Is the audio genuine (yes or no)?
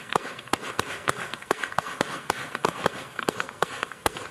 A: no